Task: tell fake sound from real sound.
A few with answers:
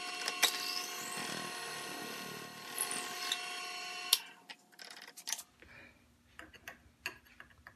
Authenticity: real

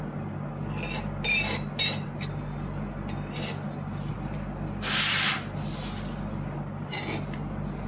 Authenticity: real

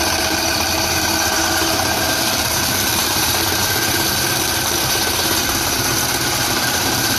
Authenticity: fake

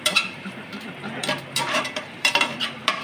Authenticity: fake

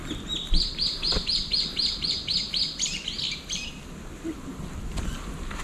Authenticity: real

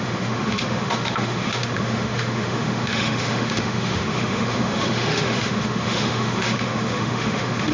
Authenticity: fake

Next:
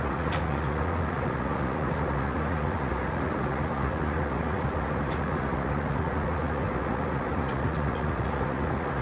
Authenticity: fake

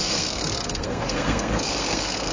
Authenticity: fake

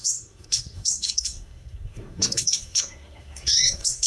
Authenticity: fake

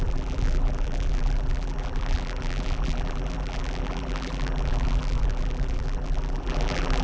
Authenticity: fake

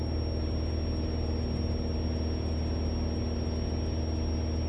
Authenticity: real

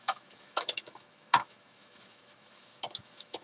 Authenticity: fake